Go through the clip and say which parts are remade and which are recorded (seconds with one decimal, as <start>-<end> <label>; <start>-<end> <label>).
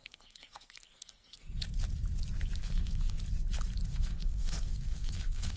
0.0-1.6 remade; 1.6-2.6 recorded; 2.6-3.2 remade; 3.2-3.9 recorded; 3.9-5.6 remade